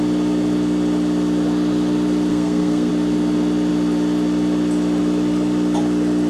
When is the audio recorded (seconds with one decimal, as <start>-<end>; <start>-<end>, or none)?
0.0-2.3; 2.9-6.3